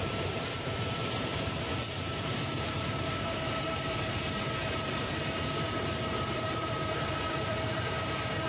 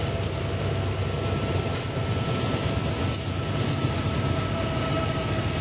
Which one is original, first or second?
second